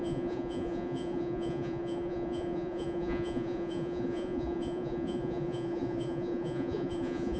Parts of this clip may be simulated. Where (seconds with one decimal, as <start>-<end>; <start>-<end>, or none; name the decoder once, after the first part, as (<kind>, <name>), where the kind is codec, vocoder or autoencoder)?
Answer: 0.0-7.4 (vocoder, Vocos)